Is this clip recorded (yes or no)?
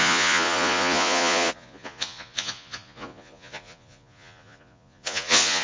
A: no